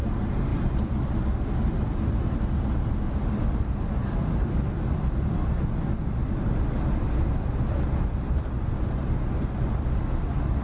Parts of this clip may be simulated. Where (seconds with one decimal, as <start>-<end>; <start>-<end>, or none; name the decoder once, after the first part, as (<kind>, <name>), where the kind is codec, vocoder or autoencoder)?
none